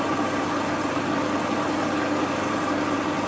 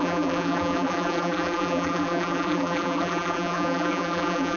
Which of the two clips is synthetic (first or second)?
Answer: second